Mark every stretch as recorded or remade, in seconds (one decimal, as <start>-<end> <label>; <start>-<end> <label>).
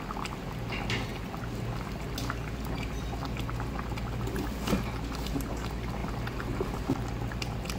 0.0-7.8 recorded